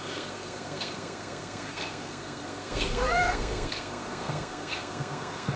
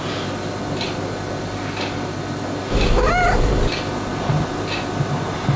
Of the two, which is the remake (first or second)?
first